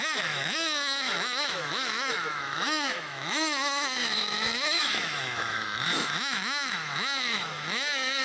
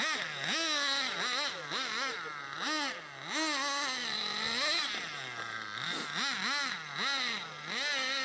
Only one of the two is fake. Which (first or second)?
first